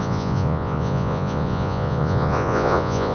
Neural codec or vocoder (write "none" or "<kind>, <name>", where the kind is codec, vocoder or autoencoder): vocoder, Vocos